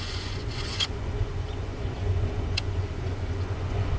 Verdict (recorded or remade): remade